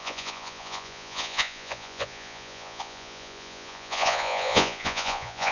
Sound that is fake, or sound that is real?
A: fake